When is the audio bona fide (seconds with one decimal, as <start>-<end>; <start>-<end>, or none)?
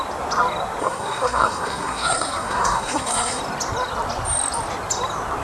0.0-0.8; 3.4-5.4